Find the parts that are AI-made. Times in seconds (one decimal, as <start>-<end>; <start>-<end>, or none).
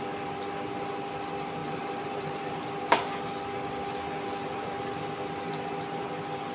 1.6-2.7; 4.4-4.9